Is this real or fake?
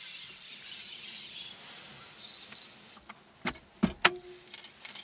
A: real